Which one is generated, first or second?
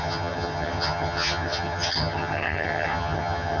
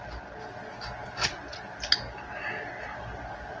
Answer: first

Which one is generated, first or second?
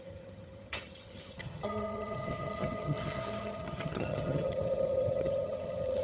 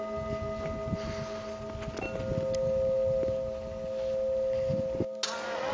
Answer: first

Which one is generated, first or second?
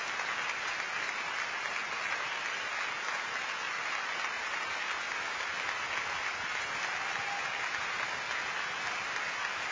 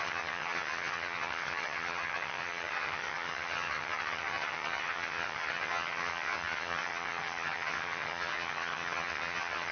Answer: second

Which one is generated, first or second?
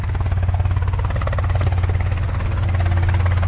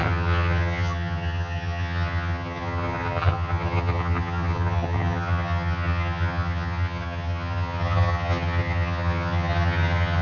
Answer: second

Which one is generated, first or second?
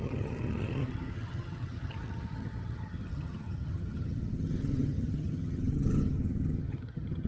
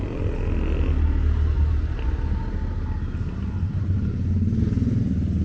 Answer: first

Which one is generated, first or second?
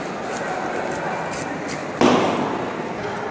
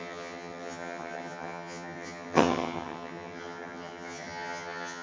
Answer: second